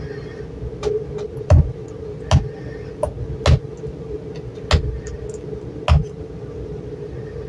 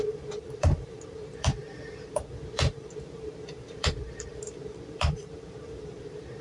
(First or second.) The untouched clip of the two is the first